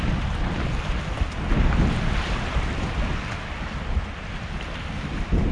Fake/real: real